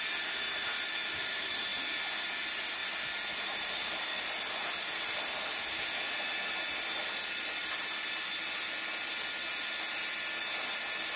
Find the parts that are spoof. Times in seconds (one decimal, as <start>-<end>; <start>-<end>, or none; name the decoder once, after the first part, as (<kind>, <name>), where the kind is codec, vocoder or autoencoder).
0.0-2.8 (vocoder, BigVGAN v2); 3.3-11.2